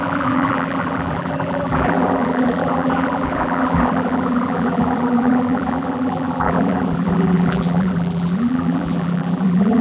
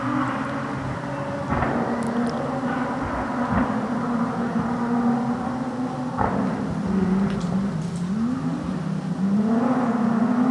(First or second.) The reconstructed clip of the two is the first